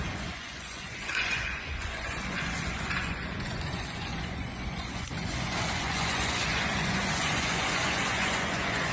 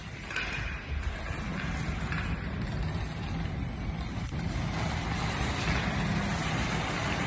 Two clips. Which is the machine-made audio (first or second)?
first